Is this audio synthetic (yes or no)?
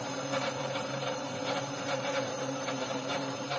yes